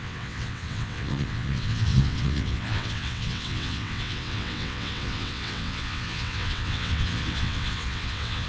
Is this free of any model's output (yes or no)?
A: no